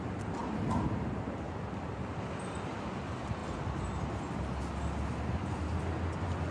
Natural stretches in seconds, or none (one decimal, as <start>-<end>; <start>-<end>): 0.0-6.5

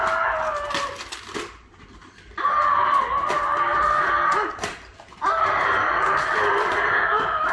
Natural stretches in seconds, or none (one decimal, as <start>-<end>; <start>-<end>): 0.0-7.5

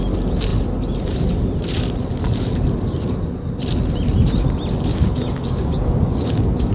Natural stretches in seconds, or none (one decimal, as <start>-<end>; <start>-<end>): 0.0-4.9